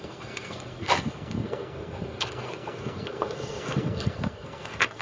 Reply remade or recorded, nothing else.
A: remade